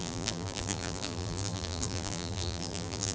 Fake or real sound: fake